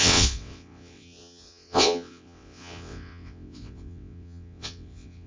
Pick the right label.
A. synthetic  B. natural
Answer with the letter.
A